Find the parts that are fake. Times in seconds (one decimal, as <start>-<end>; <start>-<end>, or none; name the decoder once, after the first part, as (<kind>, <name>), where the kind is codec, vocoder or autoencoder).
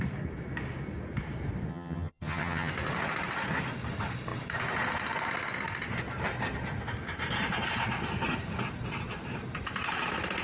1.7-2.7 (vocoder, HiFi-GAN)